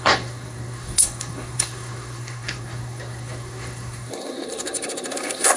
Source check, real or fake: fake